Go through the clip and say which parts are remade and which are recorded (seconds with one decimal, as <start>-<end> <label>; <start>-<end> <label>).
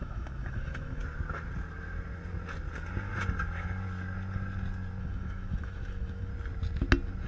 0.0-1.0 remade; 1.0-5.0 recorded; 5.0-6.3 remade; 6.3-7.3 recorded